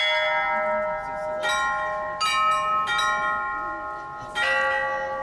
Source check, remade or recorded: recorded